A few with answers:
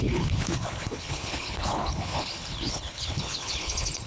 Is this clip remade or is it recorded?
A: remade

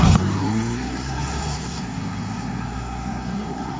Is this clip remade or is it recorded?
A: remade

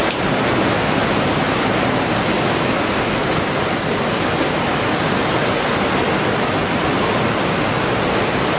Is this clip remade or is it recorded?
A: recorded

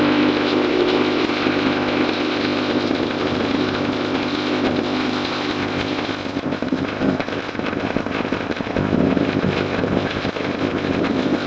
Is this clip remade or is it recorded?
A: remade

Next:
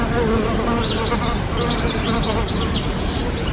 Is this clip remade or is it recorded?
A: remade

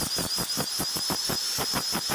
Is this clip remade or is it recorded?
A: recorded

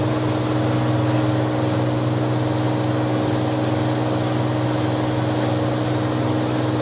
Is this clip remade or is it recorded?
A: recorded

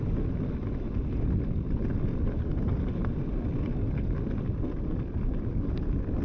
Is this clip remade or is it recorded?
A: recorded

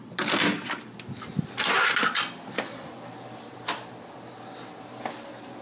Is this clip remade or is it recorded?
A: recorded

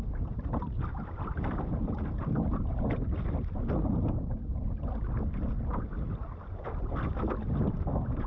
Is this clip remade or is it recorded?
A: recorded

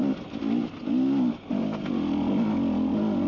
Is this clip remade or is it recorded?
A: recorded